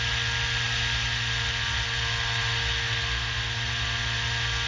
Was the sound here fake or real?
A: real